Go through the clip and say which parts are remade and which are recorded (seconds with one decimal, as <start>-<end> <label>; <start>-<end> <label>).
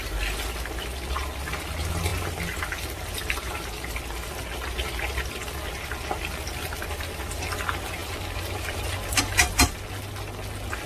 0.0-10.9 recorded